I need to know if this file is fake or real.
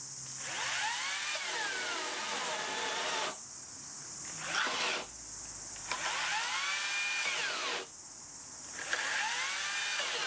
real